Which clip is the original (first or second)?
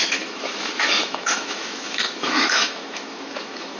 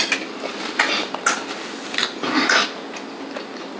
second